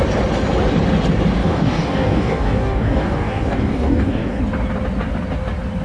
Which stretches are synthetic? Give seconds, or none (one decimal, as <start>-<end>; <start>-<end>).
1.4-4.4